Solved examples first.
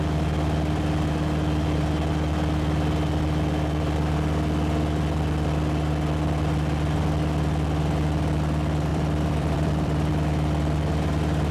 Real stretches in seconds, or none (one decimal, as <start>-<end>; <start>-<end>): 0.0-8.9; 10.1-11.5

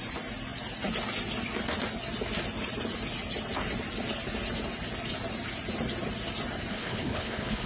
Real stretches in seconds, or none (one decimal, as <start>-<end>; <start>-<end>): 0.0-6.7

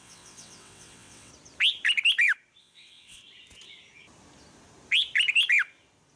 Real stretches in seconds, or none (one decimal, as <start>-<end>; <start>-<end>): 1.3-2.6; 3.2-6.2

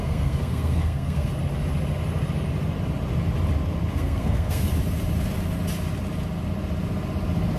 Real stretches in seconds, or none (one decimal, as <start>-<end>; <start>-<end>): 1.3-3.9; 4.7-7.6

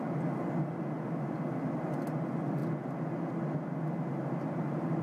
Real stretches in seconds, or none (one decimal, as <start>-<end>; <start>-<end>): 0.0-5.0

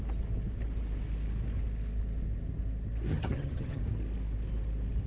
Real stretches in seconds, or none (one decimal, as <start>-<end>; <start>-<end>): 0.0-3.1; 3.8-5.1

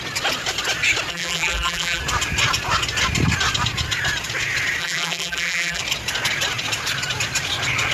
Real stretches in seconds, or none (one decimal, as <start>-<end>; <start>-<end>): 0.0-1.1; 2.0-4.8; 5.8-7.9

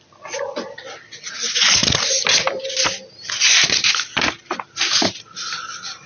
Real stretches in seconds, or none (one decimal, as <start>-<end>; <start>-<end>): 0.0-6.1